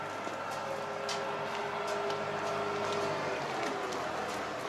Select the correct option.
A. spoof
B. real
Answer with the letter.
B